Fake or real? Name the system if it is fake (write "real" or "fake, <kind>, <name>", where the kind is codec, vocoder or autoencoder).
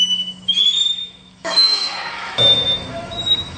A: fake, autoencoder, DAC-VAE